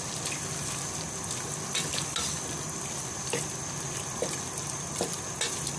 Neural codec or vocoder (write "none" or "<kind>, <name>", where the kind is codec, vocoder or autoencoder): none